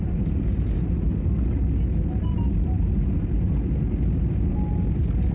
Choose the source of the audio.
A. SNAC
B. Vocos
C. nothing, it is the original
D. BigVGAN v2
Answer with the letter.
C